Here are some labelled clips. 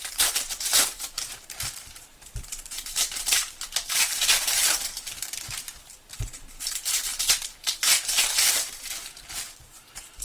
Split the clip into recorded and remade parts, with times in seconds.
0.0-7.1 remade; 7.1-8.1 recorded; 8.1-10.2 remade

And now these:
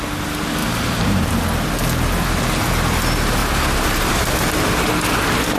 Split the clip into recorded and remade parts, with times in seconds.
0.0-0.6 recorded; 0.6-1.3 remade; 1.3-5.6 recorded

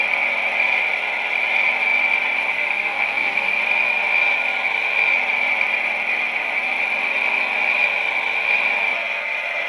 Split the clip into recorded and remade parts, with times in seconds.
0.0-2.5 recorded; 2.5-3.6 remade; 3.6-9.7 recorded